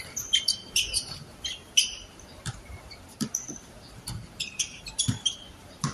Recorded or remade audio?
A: remade